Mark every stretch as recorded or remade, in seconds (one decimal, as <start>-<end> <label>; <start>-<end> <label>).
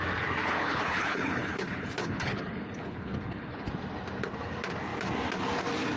0.0-0.4 recorded; 0.4-3.7 remade; 3.7-6.0 recorded